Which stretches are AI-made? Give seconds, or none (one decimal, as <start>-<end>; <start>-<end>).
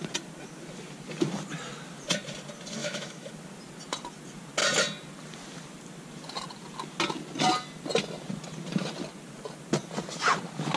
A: 2.8-3.3